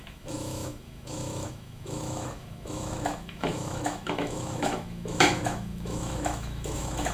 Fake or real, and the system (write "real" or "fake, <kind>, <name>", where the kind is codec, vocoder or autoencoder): fake, autoencoder, DAC-VAE